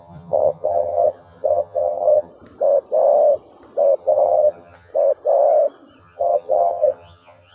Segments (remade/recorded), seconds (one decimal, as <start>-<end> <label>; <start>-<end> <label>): 0.0-2.3 remade; 2.3-4.0 recorded; 4.0-4.9 remade; 4.9-6.0 recorded; 6.0-7.5 remade